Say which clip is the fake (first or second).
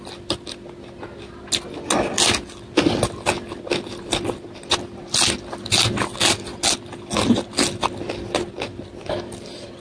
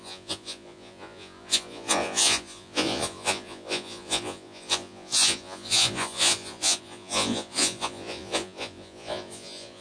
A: second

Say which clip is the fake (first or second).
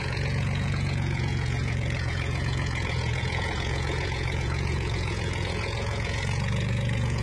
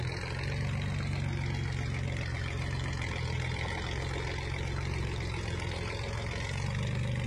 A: first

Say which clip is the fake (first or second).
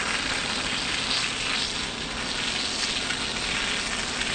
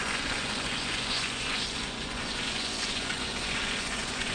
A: second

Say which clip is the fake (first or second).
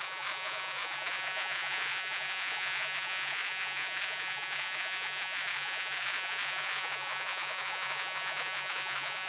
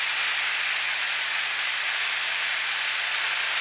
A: first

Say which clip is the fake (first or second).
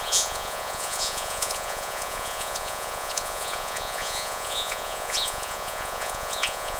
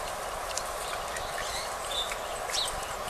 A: first